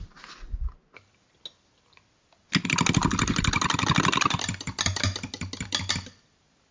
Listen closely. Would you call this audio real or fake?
real